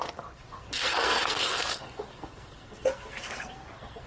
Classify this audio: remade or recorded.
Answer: remade